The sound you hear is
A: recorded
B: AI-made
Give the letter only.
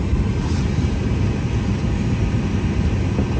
A